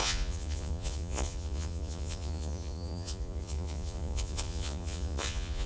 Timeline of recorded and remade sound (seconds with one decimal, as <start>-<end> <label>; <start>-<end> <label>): 0.0-5.7 remade